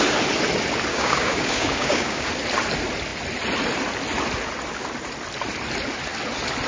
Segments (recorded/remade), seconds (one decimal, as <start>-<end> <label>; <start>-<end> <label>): 0.0-0.9 recorded; 0.9-2.3 remade; 2.3-6.7 recorded